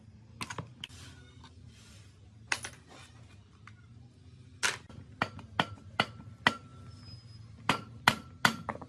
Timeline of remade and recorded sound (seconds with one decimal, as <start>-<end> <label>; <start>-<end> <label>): 0.0-8.9 recorded